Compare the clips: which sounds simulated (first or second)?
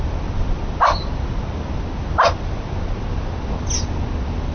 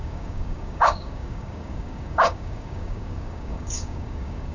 second